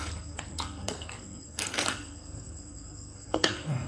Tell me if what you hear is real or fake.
fake